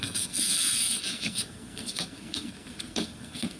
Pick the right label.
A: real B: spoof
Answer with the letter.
B